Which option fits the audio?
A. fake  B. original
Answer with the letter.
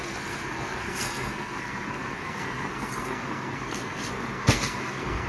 A